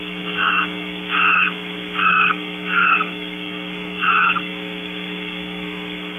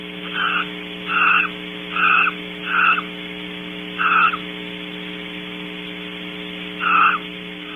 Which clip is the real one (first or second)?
second